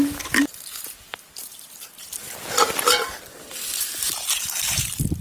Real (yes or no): no